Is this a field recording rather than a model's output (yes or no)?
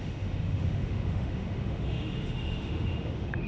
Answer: no